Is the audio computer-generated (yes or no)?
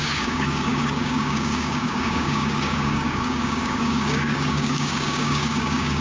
yes